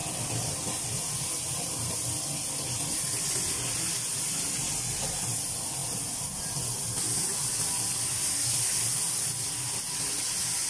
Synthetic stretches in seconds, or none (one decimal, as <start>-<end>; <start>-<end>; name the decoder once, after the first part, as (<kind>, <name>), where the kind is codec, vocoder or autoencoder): none